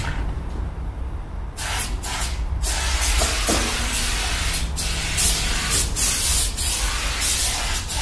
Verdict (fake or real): real